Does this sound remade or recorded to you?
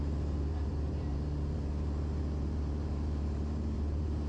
remade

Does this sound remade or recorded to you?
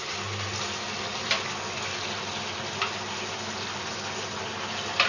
recorded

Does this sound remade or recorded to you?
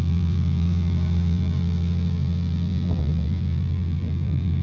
remade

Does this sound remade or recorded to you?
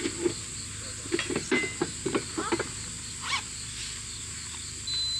recorded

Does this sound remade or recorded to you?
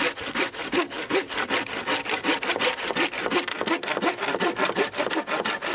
recorded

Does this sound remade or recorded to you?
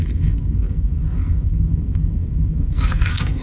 remade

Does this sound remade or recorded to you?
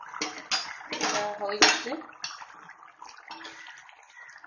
recorded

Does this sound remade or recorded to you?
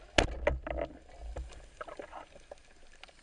recorded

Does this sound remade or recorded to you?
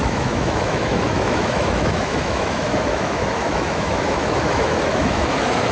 remade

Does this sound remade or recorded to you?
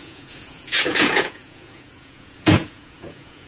remade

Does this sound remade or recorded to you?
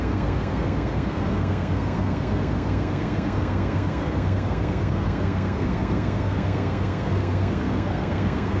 remade